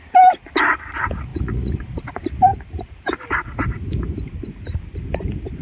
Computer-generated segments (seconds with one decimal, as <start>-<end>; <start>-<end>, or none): 1.3-2.1